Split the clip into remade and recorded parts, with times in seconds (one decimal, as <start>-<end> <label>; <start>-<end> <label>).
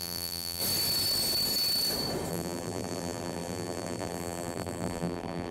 0.0-0.6 remade; 0.6-2.3 recorded; 2.3-5.5 remade